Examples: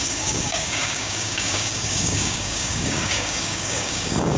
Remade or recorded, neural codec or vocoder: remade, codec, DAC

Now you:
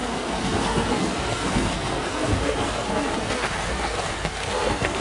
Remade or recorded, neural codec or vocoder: remade, codec, SNAC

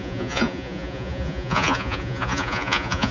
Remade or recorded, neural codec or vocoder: remade, vocoder, Vocos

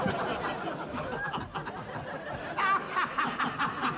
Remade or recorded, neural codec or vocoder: recorded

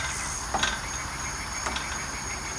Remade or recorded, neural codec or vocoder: recorded